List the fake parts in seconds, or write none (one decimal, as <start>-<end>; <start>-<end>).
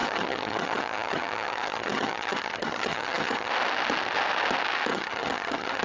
0.0-3.5; 4.9-5.8